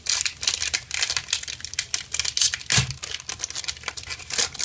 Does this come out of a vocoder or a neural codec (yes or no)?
no